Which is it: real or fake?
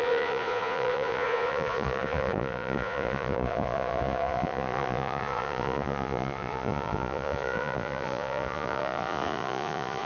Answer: fake